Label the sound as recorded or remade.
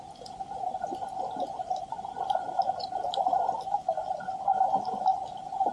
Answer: recorded